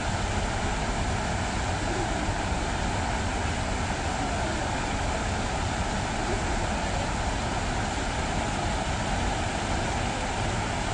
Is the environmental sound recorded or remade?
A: recorded